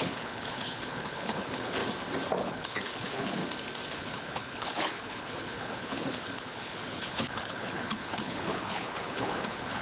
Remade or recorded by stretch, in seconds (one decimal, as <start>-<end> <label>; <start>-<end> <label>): 0.0-1.8 remade; 1.8-2.4 recorded; 2.4-3.4 remade; 3.4-3.9 recorded; 3.9-9.8 remade